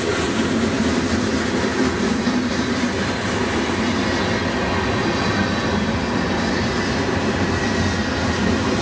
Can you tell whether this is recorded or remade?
recorded